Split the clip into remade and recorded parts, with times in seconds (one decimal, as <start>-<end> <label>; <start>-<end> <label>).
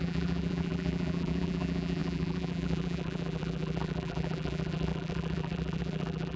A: 0.0-6.4 remade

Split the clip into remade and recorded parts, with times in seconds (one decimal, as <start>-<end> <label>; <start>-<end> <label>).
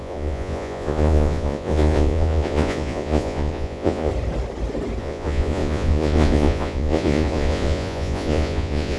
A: 0.0-4.1 remade; 4.1-5.0 recorded; 5.0-9.0 remade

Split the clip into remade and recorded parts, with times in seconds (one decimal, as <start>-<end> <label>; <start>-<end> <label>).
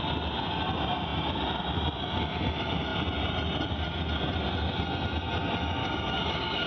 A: 0.0-5.8 recorded; 5.8-6.7 remade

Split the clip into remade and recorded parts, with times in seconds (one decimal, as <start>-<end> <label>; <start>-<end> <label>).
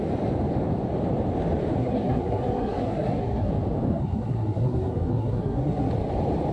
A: 0.0-1.8 recorded; 1.8-3.5 remade; 3.5-3.9 recorded; 3.9-5.9 remade; 5.9-6.5 recorded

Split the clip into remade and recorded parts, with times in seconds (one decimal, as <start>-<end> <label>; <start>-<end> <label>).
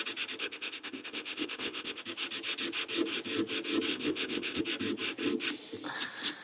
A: 0.0-0.4 recorded; 0.4-2.0 remade; 2.0-3.9 recorded; 3.9-4.6 remade; 4.6-6.4 recorded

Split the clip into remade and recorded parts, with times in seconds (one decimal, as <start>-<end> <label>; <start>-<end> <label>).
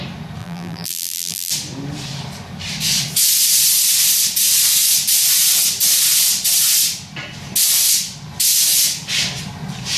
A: 0.0-0.4 recorded; 0.4-1.5 remade; 1.5-10.0 recorded